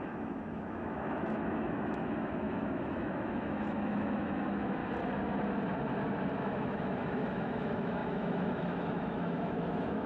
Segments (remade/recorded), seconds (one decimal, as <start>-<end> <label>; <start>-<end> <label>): 0.0-4.8 remade; 4.8-6.4 recorded; 6.4-10.1 remade